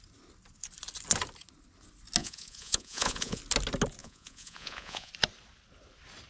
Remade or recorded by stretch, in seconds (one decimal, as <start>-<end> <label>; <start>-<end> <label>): 0.0-2.2 recorded; 2.2-3.4 remade; 3.4-4.0 recorded; 4.0-5.1 remade; 5.1-6.3 recorded